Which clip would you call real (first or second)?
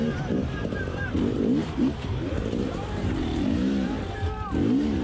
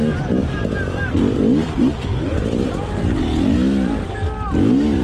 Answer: second